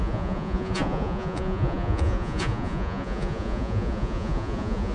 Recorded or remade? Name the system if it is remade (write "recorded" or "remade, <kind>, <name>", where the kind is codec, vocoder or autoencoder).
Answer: remade, vocoder, Vocos